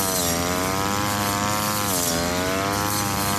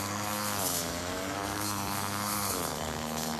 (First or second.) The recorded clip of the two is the first